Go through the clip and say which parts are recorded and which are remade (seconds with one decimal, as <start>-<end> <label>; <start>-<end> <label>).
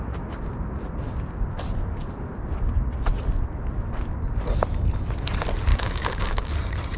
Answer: 0.0-5.7 recorded; 5.7-6.5 remade; 6.5-7.0 recorded